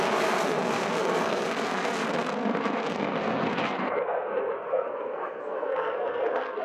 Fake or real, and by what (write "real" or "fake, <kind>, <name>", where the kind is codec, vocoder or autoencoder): fake, codec, SNAC